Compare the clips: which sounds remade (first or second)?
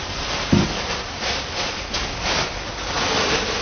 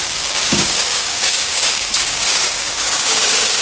second